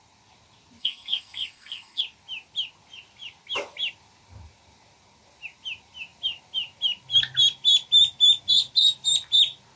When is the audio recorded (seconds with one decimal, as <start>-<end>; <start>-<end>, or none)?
0.0-0.8; 2.0-9.8